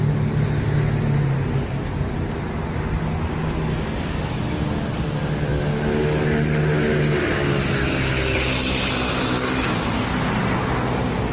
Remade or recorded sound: recorded